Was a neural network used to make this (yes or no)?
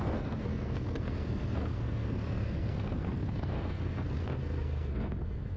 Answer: yes